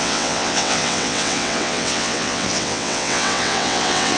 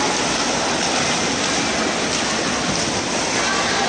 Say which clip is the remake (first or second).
first